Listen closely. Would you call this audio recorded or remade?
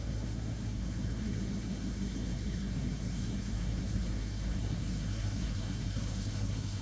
remade